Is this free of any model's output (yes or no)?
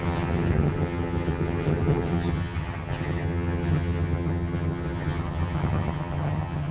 no